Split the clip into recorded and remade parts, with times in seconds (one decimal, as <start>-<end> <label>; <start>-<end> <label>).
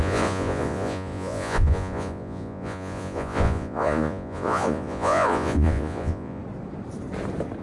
0.0-6.4 remade; 6.4-7.6 recorded